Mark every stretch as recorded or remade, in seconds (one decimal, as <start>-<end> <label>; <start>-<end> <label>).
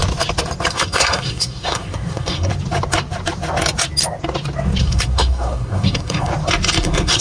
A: 0.0-0.7 recorded; 0.7-2.5 remade; 2.5-4.8 recorded; 4.8-6.3 remade; 6.3-6.8 recorded; 6.8-7.2 remade